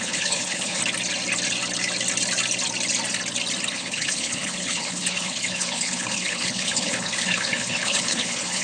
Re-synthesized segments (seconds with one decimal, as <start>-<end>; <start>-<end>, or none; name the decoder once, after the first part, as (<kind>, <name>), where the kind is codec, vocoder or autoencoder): 0.0-0.8 (codec, HILCodec); 3.7-8.6